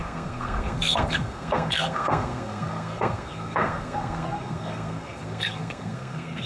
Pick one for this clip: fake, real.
fake